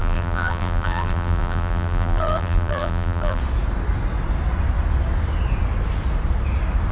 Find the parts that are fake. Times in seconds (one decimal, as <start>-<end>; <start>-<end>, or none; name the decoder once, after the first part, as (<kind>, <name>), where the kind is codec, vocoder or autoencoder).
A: 0.0-3.4 (vocoder, BigVGAN v2)